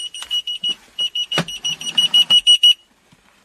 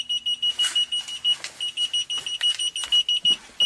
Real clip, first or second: second